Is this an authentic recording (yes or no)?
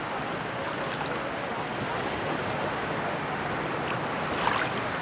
yes